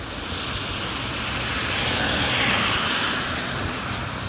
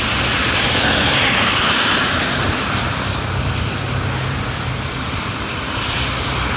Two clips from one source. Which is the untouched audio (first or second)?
first